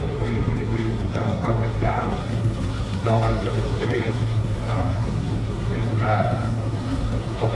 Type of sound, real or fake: fake